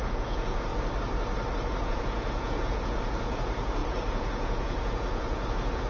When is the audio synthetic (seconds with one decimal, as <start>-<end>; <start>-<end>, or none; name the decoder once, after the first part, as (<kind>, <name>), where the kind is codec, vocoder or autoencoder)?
0.0-0.7 (vocoder, Vocos); 1.8-5.9